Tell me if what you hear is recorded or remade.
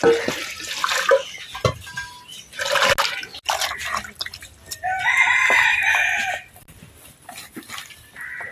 recorded